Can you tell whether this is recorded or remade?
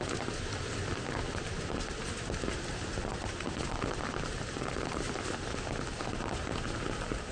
recorded